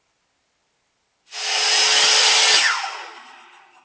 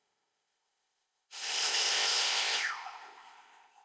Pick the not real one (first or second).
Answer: second